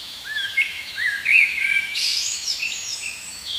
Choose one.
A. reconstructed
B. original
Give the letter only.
A